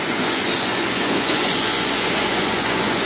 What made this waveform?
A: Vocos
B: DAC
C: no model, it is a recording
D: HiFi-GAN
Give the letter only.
A